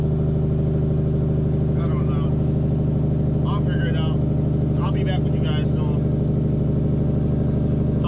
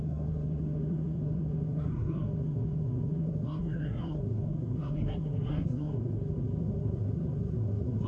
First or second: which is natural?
first